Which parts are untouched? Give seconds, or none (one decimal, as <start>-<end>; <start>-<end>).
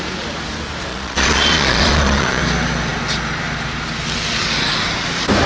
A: 0.0-0.9; 2.4-5.5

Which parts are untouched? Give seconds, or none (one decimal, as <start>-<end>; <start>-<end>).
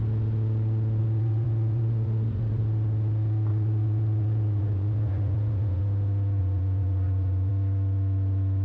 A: 0.0-1.0; 2.6-3.5; 5.8-6.4; 7.5-8.6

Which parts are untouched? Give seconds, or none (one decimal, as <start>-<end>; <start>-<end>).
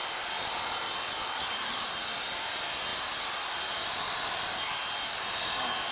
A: 0.0-5.9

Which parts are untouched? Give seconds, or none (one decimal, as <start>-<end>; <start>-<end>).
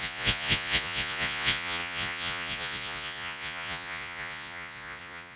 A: none